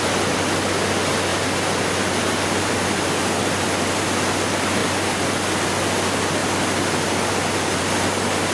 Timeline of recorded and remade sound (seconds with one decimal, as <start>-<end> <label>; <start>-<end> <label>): 0.0-4.8 recorded; 4.8-5.3 remade; 5.3-8.5 recorded